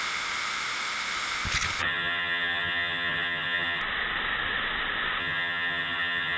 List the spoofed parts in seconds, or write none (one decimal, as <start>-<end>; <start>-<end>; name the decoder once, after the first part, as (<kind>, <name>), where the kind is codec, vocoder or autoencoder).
1.8-3.8 (vocoder, HiFi-GAN); 5.2-6.4